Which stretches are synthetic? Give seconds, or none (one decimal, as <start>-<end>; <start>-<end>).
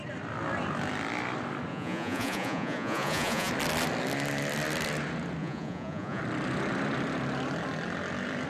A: 1.7-3.5; 5.4-6.2